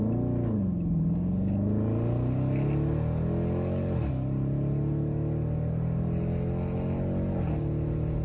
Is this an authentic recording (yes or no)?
yes